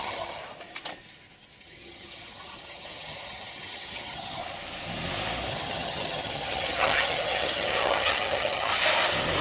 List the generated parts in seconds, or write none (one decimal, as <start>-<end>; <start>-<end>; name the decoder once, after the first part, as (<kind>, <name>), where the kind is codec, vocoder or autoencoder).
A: 0.0-0.4 (vocoder, HiFi-GAN); 1.6-4.4; 5.5-8.7